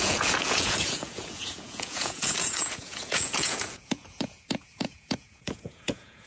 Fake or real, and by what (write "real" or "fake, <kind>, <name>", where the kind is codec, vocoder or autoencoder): fake, vocoder, Vocos